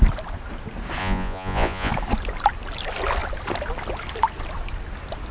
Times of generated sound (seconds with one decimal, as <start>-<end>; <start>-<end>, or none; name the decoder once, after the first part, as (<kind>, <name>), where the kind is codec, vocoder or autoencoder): 1.0-1.9 (vocoder, Vocos)